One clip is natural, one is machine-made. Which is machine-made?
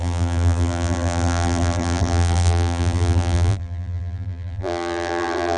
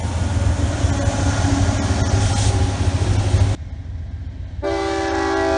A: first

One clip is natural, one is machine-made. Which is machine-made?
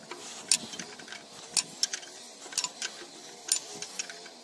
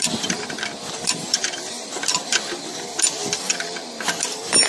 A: second